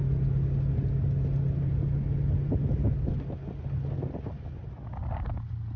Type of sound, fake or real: real